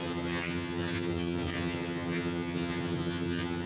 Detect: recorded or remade remade